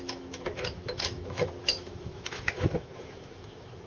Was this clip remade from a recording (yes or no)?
yes